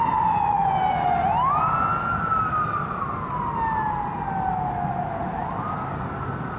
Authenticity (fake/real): real